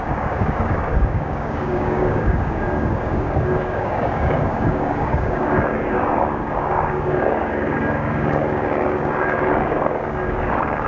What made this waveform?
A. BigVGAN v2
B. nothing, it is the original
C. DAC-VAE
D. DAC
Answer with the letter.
D